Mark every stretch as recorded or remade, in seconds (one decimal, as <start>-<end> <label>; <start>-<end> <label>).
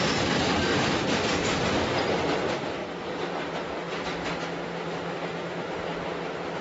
0.0-6.6 recorded